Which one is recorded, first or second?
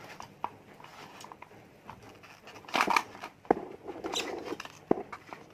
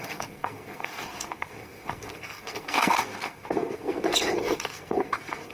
first